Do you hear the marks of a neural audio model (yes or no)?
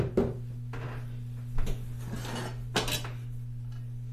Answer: no